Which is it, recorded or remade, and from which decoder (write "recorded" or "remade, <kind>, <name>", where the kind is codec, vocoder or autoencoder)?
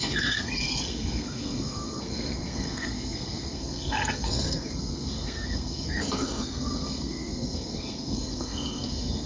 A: remade, codec, SNAC